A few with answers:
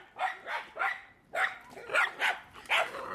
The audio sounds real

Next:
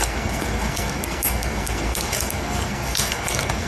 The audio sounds fake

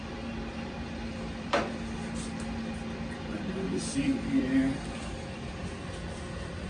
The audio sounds fake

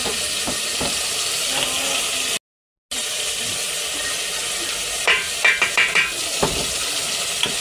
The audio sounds real